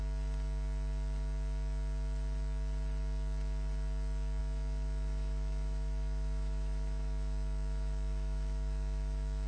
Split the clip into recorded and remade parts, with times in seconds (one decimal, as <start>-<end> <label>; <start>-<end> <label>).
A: 0.0-4.4 recorded; 4.4-9.5 remade